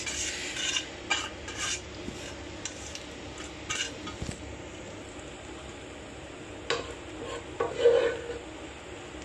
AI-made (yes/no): no